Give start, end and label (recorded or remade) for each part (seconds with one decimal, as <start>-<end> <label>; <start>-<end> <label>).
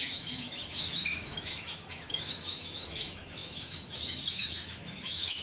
0.0-5.4 remade